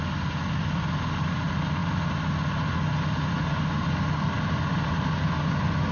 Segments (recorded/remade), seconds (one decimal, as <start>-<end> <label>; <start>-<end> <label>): 0.0-5.9 recorded